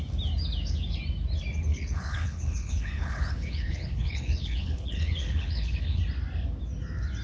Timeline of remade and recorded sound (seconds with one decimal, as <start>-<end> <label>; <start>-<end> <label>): 0.0-1.7 recorded; 1.7-6.0 remade; 6.0-7.2 recorded